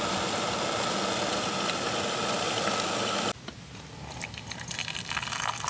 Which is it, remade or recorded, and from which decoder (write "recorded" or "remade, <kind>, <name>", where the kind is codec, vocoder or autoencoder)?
recorded